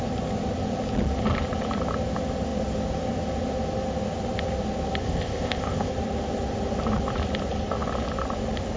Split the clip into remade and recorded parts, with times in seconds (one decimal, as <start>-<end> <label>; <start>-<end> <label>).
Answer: 0.0-5.0 recorded; 5.0-5.9 remade; 5.9-8.8 recorded